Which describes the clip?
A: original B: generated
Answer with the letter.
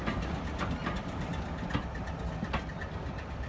A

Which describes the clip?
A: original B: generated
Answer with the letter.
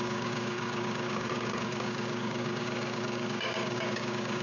B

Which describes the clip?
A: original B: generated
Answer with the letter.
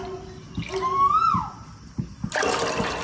A